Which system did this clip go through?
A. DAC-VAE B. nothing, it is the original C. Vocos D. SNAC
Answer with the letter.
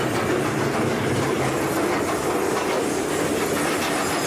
B